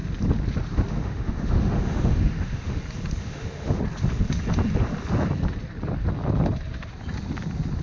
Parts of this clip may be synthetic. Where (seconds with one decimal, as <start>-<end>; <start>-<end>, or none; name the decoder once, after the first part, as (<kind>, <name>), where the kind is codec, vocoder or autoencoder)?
0.9-2.8 (autoencoder, DAC-VAE); 3.2-3.8